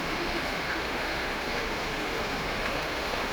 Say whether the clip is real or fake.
fake